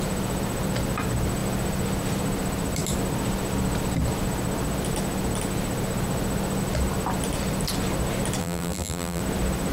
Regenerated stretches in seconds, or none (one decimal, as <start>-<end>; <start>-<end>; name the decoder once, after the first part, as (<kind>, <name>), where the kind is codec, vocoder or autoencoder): 8.4-9.2 (vocoder, BigVGAN v2)